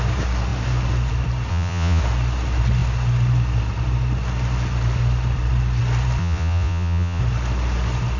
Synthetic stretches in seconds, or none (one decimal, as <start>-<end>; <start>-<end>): 1.5-2.0; 6.2-7.2